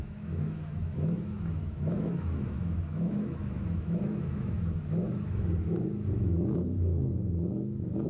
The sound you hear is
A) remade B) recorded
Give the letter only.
A